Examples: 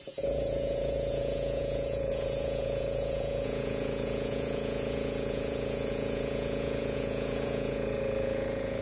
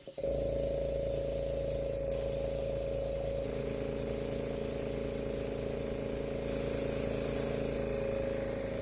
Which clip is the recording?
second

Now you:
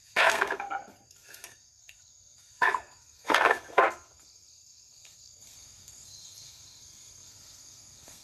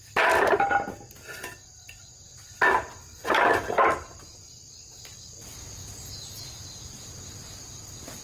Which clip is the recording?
second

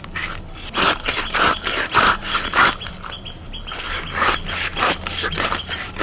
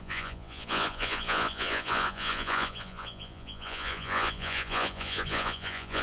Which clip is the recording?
first